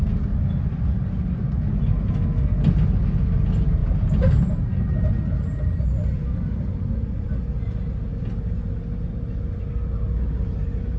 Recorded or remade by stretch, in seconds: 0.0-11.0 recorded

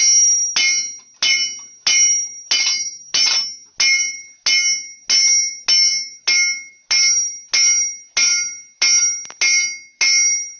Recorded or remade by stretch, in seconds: 0.0-10.6 recorded

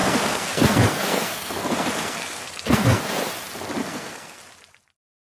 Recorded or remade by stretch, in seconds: 0.0-3.1 remade; 3.1-3.8 recorded; 3.8-4.4 remade; 4.4-5.2 recorded

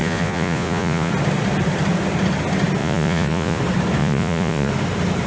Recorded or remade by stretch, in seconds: 0.0-1.1 remade; 1.1-2.8 recorded; 2.8-3.6 remade; 3.6-4.0 recorded; 4.0-4.7 remade; 4.7-5.3 recorded